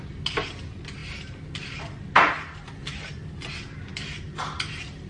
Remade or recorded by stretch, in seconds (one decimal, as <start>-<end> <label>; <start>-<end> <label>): 0.0-5.1 recorded